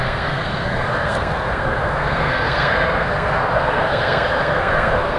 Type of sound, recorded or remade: remade